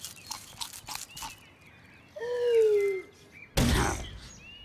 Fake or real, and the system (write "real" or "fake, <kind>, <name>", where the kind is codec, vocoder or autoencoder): real